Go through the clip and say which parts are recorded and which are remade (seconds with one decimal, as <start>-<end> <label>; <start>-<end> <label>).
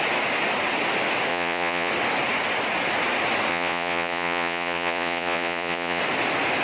0.0-1.3 recorded; 1.3-1.9 remade; 1.9-3.5 recorded; 3.5-6.0 remade; 6.0-6.6 recorded